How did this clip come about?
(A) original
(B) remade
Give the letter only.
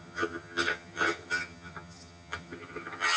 B